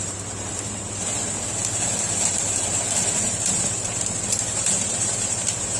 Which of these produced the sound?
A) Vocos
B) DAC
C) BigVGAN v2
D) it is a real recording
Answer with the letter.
C